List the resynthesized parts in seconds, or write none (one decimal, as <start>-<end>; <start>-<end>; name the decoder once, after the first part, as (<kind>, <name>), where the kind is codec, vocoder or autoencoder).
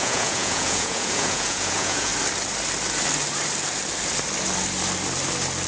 0.0-2.1 (vocoder, Vocos)